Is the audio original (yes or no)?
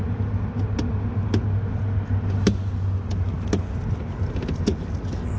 yes